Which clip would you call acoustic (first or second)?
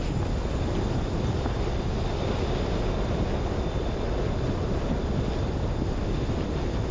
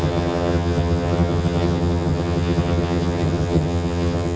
first